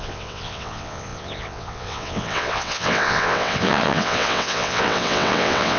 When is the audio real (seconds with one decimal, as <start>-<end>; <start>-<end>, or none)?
none